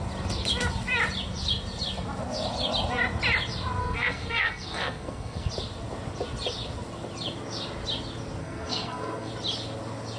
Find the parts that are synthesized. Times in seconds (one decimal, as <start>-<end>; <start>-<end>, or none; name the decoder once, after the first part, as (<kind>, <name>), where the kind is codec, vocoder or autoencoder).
3.8-5.5 (codec, SNAC); 8.4-9.3